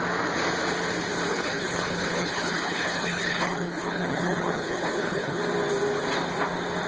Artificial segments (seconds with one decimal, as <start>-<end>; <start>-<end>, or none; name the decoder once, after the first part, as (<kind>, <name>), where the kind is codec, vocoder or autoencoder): 1.3-5.4 (codec, HILCodec)